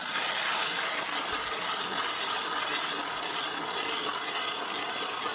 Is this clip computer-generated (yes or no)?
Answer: no